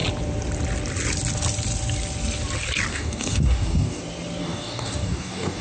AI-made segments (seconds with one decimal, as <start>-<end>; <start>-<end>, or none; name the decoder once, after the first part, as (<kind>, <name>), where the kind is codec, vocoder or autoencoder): 2.9-4.0 (codec, DAC); 4.4-5.6